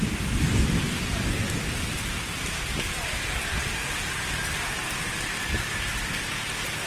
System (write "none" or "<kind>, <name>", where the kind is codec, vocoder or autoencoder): none